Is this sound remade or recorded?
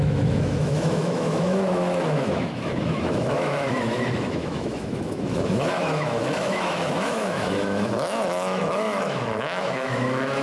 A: remade